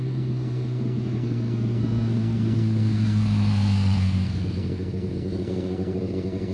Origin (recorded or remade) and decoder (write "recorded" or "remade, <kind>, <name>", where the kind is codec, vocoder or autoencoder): remade, codec, SNAC